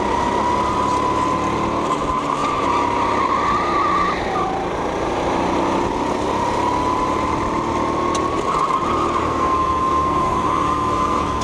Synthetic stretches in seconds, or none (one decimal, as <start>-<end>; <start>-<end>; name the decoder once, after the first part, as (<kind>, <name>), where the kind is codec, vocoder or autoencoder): 9.2-11.4 (codec, SNAC)